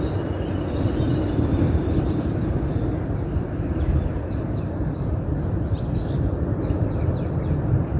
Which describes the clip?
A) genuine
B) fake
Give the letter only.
B